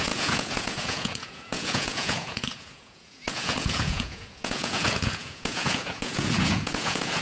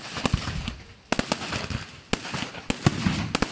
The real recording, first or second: second